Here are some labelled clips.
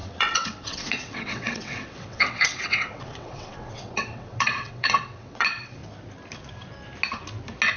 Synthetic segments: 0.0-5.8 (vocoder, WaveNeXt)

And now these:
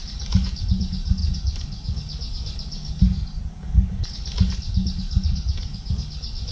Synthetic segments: 0.0-6.5 (codec, DAC)

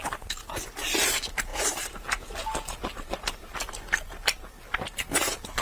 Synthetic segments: none

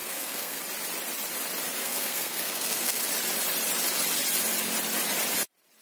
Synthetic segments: 0.0-0.6 (codec, SNAC); 1.8-3.0

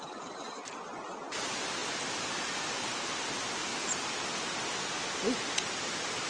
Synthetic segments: none

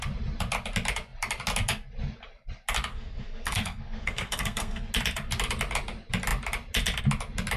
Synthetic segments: 2.9-4.9 (codec, SNAC)